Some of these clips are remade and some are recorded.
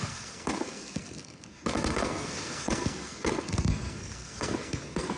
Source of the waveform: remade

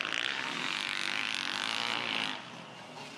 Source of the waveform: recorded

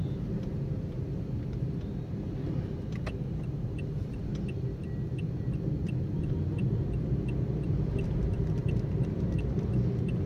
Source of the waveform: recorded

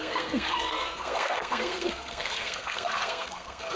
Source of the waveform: remade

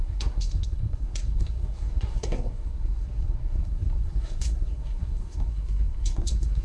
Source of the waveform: remade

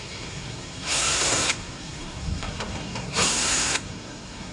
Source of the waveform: remade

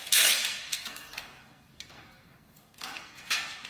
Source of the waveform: remade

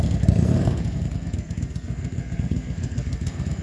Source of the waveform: remade